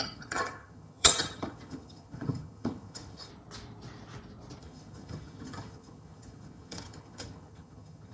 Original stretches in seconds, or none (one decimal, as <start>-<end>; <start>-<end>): 3.3-4.6